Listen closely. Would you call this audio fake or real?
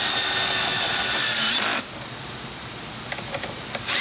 real